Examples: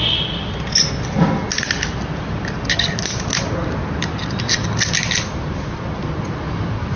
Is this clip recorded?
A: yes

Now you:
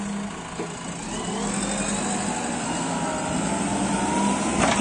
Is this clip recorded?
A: yes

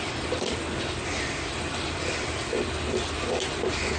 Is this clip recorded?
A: yes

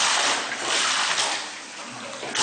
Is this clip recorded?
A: yes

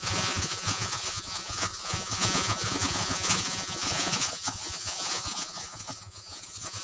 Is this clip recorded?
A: no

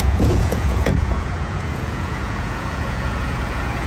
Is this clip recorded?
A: no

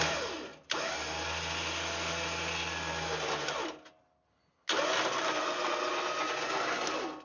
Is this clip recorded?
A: yes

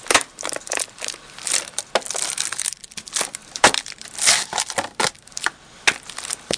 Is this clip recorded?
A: yes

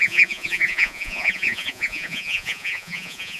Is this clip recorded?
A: no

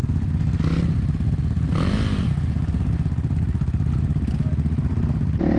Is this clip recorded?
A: yes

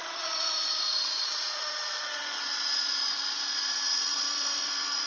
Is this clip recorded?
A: no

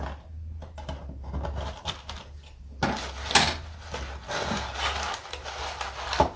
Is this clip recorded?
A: yes